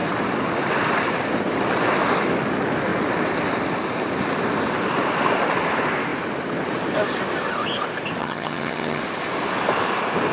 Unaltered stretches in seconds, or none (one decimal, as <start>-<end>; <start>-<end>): 0.0-8.2; 9.0-10.3